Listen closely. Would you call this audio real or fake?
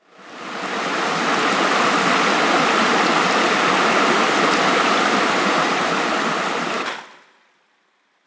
real